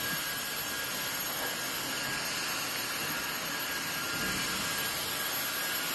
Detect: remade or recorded recorded